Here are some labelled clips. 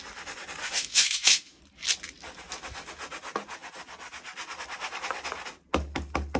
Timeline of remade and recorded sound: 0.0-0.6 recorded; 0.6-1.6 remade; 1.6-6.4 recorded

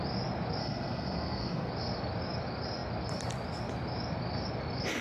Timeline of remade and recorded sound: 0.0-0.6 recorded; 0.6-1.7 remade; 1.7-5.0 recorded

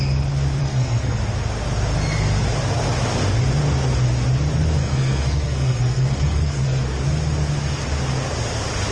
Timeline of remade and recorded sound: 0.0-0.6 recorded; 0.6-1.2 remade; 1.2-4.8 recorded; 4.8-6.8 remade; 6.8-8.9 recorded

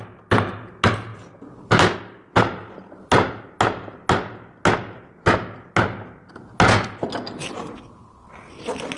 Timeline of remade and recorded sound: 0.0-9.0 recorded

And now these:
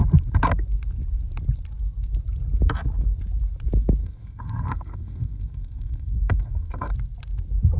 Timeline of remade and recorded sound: 0.0-4.0 recorded; 4.0-6.9 remade; 6.9-7.8 recorded

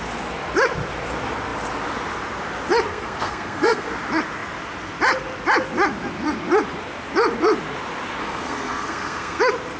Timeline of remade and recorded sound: 0.0-2.9 recorded; 2.9-3.9 remade; 3.9-8.2 recorded; 8.2-9.4 remade; 9.4-9.8 recorded